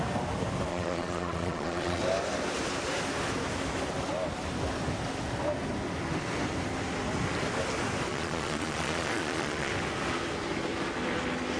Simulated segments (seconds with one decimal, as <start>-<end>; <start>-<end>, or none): 0.7-2.0; 8.1-9.7